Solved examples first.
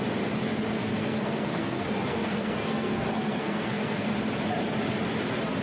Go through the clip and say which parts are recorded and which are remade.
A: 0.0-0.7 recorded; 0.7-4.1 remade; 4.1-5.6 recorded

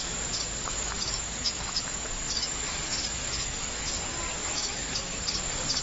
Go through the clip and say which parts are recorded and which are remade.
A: 0.0-0.7 recorded; 0.7-4.0 remade; 4.0-4.4 recorded; 4.4-5.2 remade; 5.2-5.8 recorded